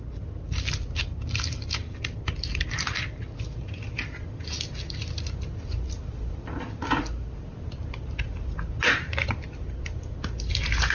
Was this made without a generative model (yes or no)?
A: yes